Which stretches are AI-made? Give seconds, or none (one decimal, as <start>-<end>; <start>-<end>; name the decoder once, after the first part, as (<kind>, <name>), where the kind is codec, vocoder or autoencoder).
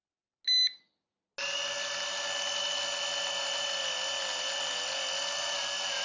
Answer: none